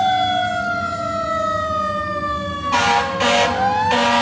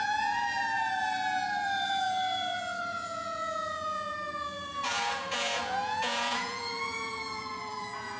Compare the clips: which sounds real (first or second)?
first